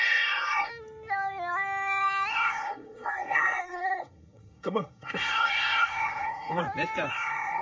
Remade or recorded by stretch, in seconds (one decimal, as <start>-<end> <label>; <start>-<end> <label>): 0.0-0.7 remade; 0.7-2.3 recorded; 2.3-6.6 remade; 6.6-7.1 recorded; 7.1-7.6 remade